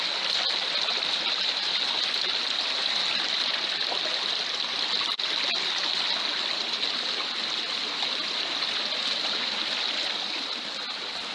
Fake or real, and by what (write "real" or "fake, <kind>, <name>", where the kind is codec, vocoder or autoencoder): real